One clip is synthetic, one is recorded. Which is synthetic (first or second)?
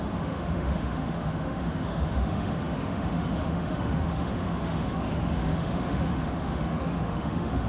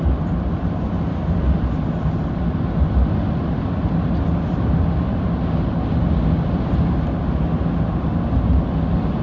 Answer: first